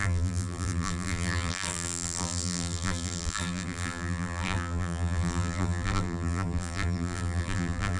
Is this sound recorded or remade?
remade